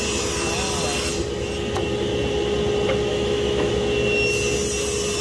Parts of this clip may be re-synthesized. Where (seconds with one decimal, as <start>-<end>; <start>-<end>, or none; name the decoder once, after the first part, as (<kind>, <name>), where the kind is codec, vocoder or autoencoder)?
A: 3.1-3.7 (autoencoder, DAC-VAE)

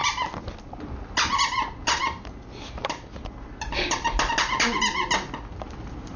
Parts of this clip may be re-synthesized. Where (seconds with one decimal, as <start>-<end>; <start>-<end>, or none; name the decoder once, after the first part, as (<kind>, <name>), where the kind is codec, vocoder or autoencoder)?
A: none

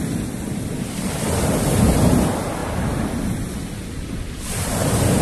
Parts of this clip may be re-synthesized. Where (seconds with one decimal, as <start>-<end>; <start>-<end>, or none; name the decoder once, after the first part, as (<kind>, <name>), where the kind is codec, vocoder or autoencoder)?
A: none

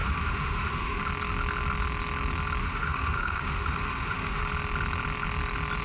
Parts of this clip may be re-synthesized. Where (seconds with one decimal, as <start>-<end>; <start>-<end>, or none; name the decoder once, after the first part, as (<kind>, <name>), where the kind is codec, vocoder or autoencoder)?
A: 0.0-1.0 (autoencoder, DAC-VAE); 2.6-4.4

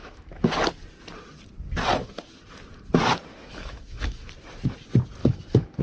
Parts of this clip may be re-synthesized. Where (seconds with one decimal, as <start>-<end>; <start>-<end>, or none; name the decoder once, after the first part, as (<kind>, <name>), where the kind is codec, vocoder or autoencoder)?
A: 0.0-0.5 (autoencoder, DAC-VAE); 3.3-4.3; 5.2-5.8

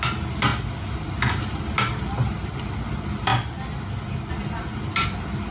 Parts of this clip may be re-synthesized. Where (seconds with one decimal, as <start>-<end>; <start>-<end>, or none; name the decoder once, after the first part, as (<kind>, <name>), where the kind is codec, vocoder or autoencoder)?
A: none

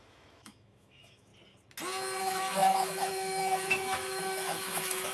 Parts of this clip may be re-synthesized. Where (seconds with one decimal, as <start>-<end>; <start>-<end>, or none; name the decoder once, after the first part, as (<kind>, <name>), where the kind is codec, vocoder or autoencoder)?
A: 0.0-1.3 (autoencoder, DAC-VAE); 2.2-5.1